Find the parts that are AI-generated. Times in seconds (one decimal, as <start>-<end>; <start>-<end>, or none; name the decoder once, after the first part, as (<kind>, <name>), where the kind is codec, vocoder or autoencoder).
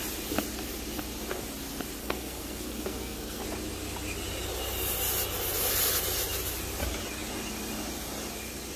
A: 2.0-3.4 (codec, SNAC)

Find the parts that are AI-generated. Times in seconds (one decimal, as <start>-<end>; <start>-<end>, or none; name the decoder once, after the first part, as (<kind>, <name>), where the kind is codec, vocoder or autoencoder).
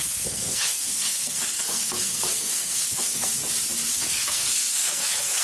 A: 0.0-3.4 (codec, SNAC); 3.9-5.4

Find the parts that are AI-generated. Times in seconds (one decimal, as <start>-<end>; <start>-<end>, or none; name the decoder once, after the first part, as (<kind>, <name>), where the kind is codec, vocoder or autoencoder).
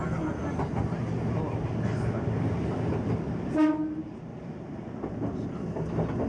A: none